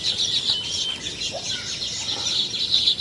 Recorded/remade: recorded